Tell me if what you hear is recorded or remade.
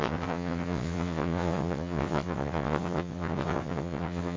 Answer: remade